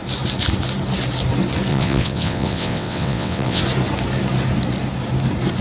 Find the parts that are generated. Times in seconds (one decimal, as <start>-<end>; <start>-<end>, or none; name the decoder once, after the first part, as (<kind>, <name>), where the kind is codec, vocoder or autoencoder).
1.7-3.6 (vocoder, WaveNeXt)